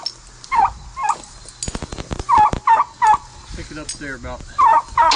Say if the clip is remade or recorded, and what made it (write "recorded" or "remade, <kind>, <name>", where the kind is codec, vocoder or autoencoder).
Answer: recorded